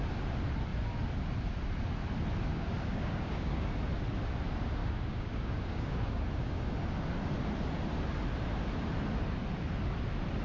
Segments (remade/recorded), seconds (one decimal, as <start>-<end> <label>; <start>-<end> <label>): 0.0-2.5 recorded; 2.5-3.7 remade; 3.7-4.8 recorded; 4.8-6.7 remade; 6.7-10.4 recorded